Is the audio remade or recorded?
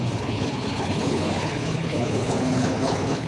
remade